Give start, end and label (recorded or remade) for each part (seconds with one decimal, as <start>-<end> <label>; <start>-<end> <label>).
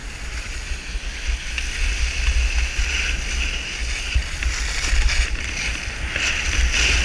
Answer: 0.0-7.0 recorded